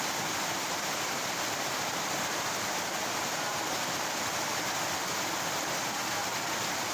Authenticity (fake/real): fake